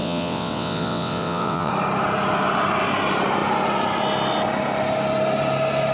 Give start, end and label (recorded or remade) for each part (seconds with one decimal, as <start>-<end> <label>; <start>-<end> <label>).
0.0-1.7 remade; 1.7-5.9 recorded

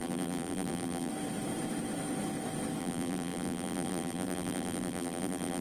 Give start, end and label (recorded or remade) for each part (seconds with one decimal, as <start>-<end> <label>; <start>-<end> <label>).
0.0-1.1 remade; 1.1-2.8 recorded; 2.8-5.6 remade

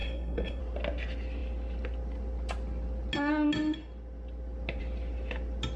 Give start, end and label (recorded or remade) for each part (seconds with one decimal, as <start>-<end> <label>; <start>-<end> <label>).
0.0-0.6 remade; 0.6-5.8 recorded

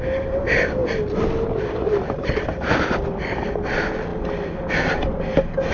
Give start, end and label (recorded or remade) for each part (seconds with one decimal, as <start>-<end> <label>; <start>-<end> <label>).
0.0-5.7 recorded